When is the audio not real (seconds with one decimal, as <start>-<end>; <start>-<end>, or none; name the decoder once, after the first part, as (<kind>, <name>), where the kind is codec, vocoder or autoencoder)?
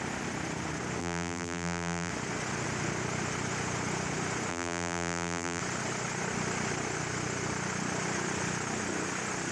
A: 1.0-2.1 (vocoder, BigVGAN v2); 4.5-5.6